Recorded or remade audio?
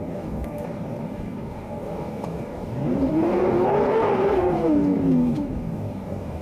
remade